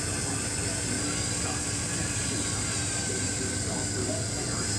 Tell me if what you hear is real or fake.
real